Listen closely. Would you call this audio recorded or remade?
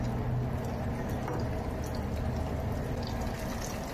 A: recorded